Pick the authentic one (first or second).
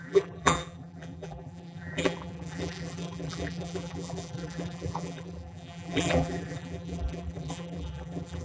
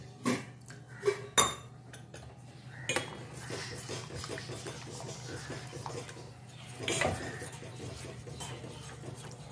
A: second